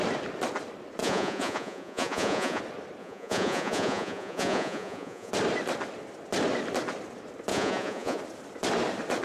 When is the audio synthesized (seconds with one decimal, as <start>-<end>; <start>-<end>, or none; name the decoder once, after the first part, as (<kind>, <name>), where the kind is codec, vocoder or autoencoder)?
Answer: 1.0-2.6 (vocoder, Vocos); 3.0-5.3; 7.5-8.2